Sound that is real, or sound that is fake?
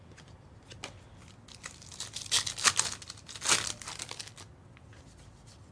real